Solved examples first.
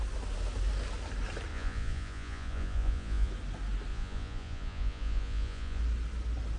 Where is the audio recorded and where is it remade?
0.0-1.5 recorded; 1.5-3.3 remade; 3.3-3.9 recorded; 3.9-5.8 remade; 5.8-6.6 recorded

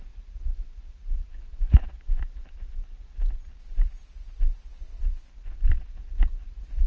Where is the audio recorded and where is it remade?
0.0-6.9 recorded

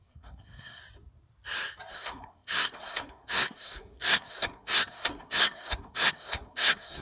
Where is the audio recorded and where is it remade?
0.0-0.8 remade; 0.8-1.9 recorded; 1.9-7.0 remade